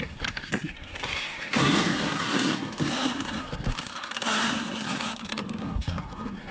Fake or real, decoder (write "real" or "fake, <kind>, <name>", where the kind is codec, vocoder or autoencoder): fake, codec, SNAC